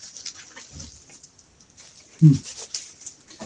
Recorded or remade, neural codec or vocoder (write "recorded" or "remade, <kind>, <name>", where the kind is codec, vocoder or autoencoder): recorded